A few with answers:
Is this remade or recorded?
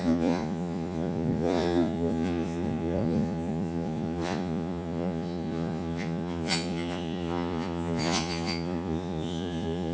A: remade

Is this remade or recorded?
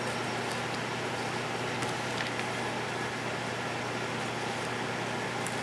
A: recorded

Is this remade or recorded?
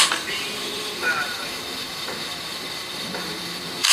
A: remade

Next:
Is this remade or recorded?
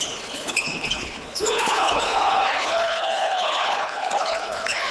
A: remade